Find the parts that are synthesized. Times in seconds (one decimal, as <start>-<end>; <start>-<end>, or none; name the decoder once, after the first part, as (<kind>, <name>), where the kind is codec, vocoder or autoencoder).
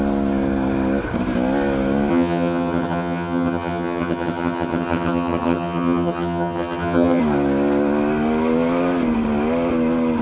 2.1-7.2 (vocoder, HiFi-GAN)